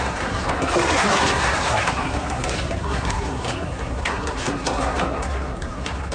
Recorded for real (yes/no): no